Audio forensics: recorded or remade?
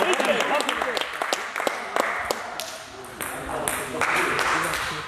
recorded